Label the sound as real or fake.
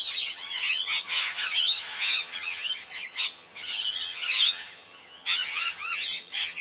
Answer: fake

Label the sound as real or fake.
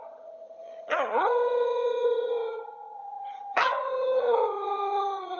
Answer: fake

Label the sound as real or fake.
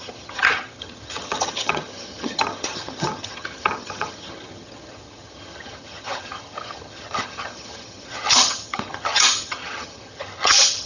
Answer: fake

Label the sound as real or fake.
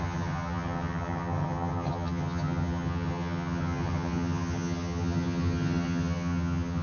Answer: fake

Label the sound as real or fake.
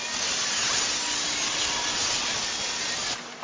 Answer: real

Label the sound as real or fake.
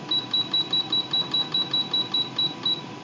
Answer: real